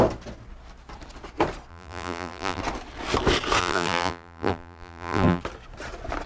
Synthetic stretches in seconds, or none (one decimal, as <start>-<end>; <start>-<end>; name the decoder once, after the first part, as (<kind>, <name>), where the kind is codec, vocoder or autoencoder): 1.7-2.6 (vocoder, BigVGAN v2); 3.6-5.4